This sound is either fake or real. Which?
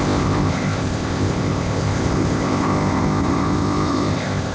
fake